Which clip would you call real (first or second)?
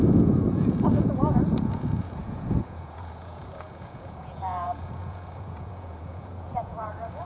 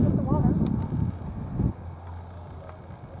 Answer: second